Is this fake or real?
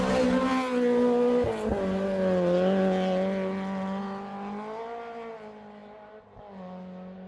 real